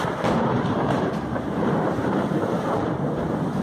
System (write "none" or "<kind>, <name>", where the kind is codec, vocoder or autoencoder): vocoder, BigVGAN v2